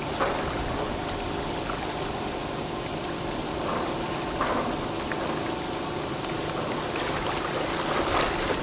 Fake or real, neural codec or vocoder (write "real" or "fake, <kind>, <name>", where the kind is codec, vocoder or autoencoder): real